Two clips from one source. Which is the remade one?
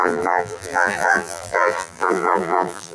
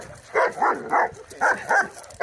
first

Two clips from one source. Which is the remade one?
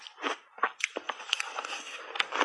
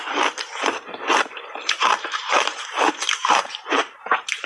second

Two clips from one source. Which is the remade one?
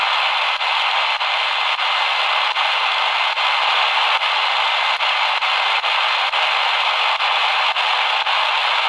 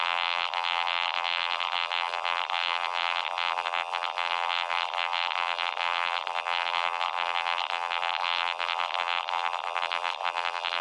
second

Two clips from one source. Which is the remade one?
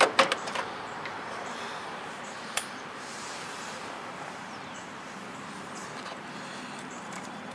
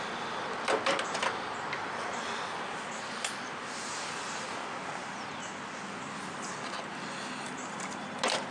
first